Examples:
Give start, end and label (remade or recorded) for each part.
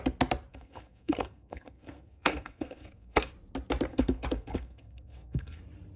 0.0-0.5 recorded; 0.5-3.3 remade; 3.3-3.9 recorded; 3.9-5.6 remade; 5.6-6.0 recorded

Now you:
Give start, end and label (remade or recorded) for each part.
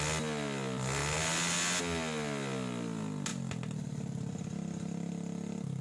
0.0-5.8 recorded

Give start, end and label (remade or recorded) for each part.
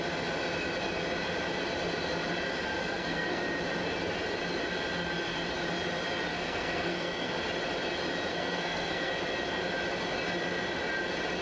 0.0-2.8 recorded; 2.8-3.4 remade; 3.4-6.3 recorded; 6.3-7.3 remade; 7.3-8.3 recorded; 8.3-9.1 remade; 9.1-11.4 recorded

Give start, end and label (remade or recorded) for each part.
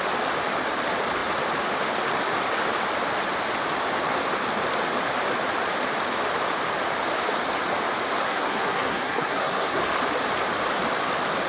0.0-8.2 recorded; 8.2-9.8 remade; 9.8-11.5 recorded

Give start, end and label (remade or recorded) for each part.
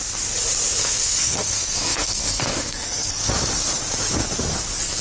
0.0-0.8 recorded; 0.8-3.1 remade; 3.1-5.0 recorded